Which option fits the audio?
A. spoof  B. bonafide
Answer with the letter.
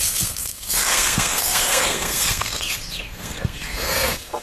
A